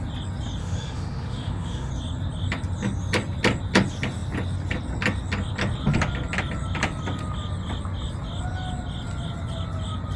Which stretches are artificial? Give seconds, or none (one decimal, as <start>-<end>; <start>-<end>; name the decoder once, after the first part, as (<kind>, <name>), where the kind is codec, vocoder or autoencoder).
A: 0.6-1.9 (autoencoder, DAC-VAE)